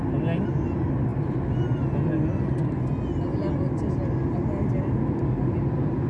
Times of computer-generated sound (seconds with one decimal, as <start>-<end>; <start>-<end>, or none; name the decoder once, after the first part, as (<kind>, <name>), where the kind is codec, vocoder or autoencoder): none